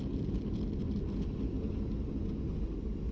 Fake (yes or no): no